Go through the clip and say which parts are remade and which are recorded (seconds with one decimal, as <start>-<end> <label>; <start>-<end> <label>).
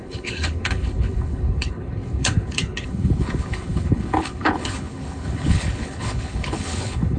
0.0-7.2 remade